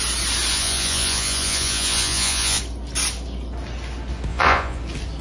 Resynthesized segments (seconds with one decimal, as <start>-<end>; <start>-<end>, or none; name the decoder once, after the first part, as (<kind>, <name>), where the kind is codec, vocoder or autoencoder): 0.5-2.6 (vocoder, Vocos); 4.3-4.8